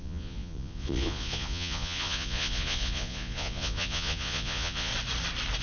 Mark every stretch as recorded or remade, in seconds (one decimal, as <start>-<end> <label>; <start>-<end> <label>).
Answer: 0.0-4.9 remade; 4.9-5.6 recorded